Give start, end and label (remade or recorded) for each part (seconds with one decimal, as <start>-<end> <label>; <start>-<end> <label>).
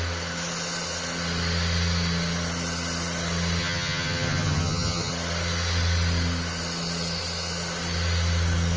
0.0-3.6 recorded; 3.6-5.1 remade; 5.1-8.8 recorded